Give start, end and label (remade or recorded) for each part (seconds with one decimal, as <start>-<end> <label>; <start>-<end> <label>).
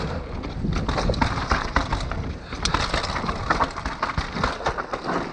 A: 0.0-5.3 recorded